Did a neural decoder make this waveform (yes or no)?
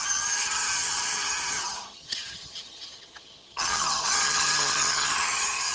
yes